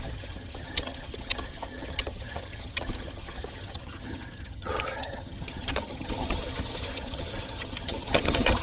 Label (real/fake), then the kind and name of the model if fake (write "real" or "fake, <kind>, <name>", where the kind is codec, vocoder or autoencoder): fake, vocoder, HiFi-GAN